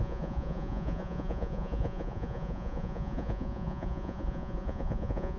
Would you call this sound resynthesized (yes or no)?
yes